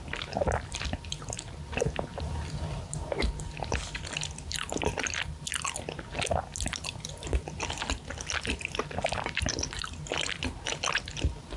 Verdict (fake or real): real